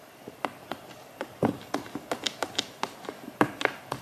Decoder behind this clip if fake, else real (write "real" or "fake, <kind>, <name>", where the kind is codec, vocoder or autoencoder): real